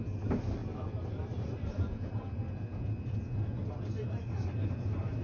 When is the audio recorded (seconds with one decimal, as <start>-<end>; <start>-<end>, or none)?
0.6-3.7